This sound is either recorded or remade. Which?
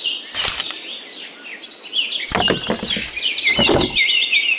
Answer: recorded